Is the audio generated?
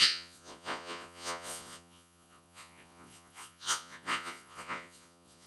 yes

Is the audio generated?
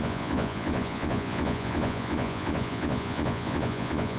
yes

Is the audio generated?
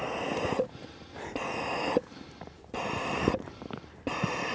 no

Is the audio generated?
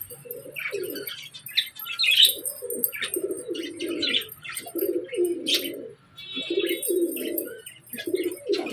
no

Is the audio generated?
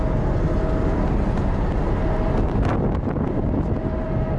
no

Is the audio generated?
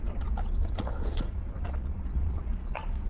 yes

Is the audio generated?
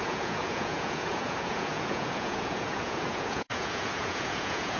yes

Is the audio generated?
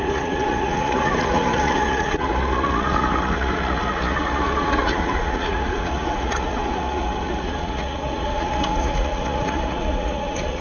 yes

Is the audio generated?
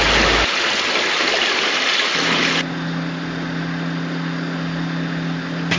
no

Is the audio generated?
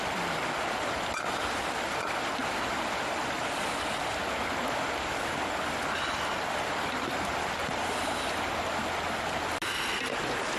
no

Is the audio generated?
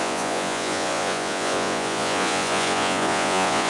yes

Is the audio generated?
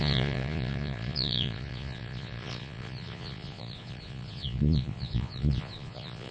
yes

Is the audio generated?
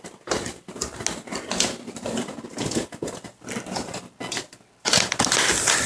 no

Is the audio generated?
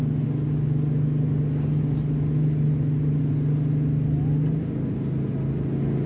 no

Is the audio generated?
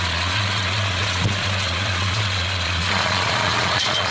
yes